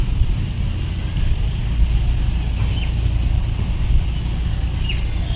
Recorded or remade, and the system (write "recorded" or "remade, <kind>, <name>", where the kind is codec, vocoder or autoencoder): recorded